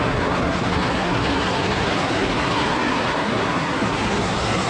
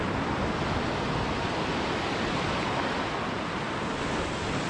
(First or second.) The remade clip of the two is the first